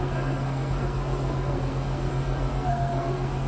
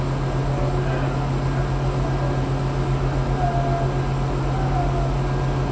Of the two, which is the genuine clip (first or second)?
second